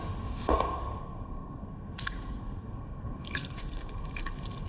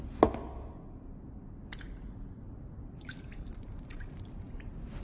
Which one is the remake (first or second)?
first